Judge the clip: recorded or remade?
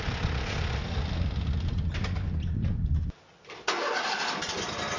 recorded